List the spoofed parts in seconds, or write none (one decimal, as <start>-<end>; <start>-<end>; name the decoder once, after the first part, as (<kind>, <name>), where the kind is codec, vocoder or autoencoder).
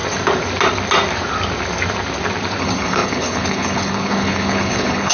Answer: 2.6-5.1 (codec, HILCodec)